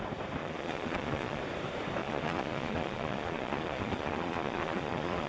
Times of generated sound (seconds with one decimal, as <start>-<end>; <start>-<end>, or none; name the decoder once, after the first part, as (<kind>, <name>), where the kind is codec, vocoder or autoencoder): 0.4-1.4 (vocoder, Vocos); 2.0-5.3